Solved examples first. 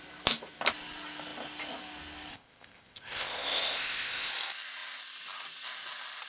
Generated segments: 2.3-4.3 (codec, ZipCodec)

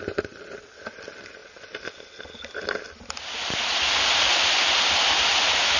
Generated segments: none

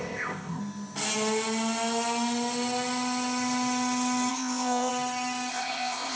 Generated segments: 0.0-0.6 (codec, ZipCodec); 4.3-4.9; 5.5-6.2

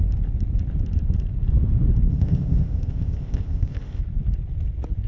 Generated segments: 2.1-4.0 (codec, ZipCodec)

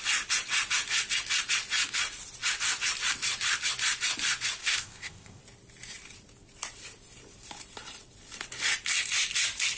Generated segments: 4.6-5.4 (codec, ZipCodec)

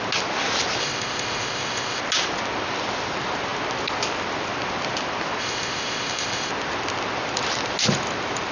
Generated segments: 0.8-2.0 (codec, ZipCodec); 5.4-6.5

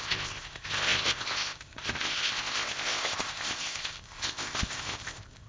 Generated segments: 0.0-5.5 (codec, ZipCodec)

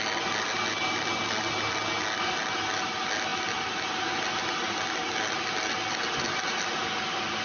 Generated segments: none